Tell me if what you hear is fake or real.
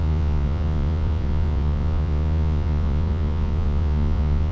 fake